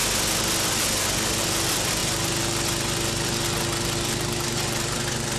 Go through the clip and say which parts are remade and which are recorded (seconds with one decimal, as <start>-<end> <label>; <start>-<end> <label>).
0.0-1.4 recorded; 1.4-2.0 remade; 2.0-5.4 recorded